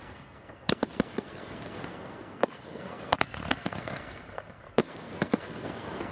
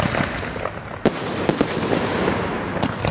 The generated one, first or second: first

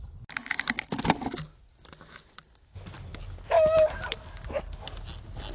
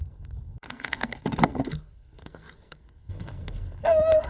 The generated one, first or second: second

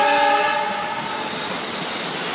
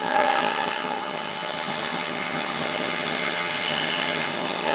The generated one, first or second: second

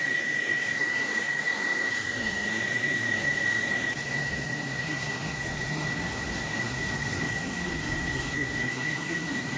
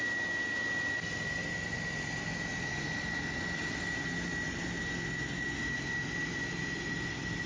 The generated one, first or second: first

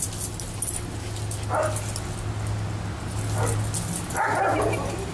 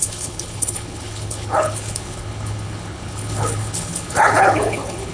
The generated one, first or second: second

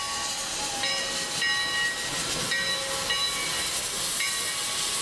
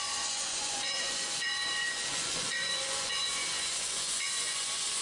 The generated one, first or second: second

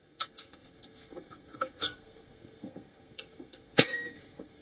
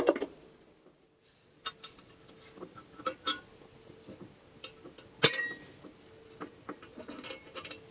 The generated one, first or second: first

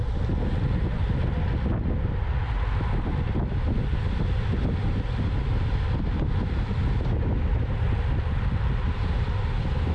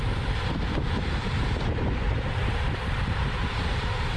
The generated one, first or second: second